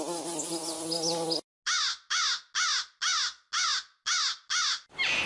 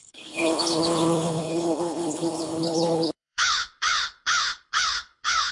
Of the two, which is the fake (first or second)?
second